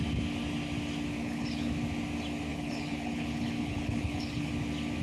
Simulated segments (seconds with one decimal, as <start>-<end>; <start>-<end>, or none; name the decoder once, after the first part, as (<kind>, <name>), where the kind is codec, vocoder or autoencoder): 1.2-1.7 (codec, HILCodec); 2.5-4.5